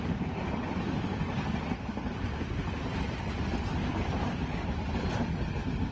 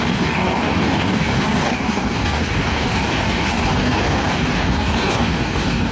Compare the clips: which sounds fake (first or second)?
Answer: second